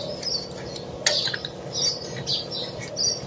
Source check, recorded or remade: recorded